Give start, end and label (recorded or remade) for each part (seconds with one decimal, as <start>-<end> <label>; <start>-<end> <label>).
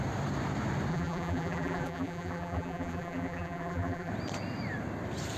0.0-0.9 recorded; 0.9-4.1 remade; 4.1-5.4 recorded